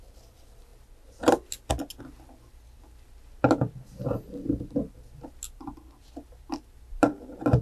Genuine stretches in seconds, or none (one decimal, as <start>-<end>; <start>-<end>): 0.0-7.6